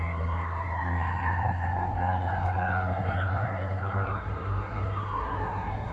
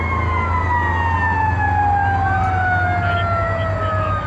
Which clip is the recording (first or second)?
second